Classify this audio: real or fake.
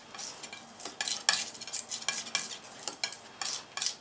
real